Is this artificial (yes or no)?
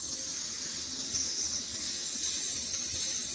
no